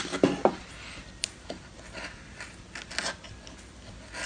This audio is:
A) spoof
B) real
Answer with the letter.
B